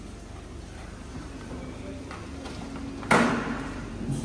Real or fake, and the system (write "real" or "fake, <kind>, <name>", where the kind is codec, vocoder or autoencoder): real